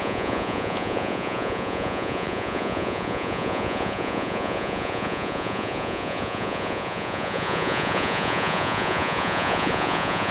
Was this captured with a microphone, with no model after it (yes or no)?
no